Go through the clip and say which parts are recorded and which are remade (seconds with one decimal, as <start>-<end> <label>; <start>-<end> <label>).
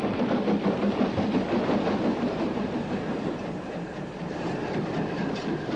0.0-2.1 recorded; 2.1-4.8 remade; 4.8-5.8 recorded